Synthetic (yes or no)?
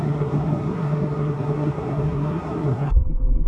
yes